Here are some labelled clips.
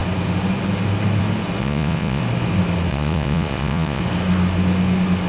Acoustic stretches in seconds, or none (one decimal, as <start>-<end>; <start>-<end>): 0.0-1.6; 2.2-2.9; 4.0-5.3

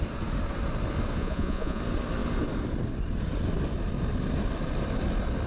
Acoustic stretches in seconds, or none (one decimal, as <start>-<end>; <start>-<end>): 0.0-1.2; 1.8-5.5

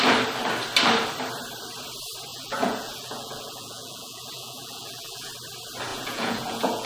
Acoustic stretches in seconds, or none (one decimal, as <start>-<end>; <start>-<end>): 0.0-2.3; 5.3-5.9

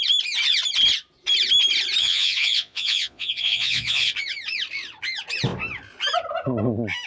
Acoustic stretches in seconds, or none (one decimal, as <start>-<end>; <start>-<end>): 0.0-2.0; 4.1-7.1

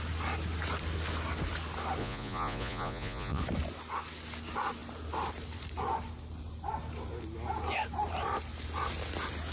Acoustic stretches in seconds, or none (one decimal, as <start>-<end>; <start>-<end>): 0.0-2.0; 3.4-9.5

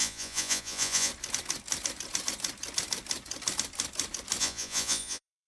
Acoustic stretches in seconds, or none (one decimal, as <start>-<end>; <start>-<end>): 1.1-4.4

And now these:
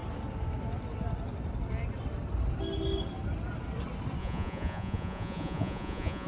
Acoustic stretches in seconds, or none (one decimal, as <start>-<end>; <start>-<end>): 0.0-4.2